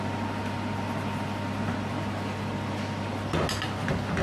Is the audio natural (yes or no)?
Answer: yes